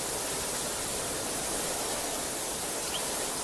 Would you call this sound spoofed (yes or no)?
no